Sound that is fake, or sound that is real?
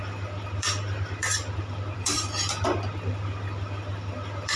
fake